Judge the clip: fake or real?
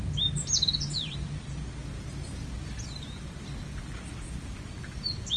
real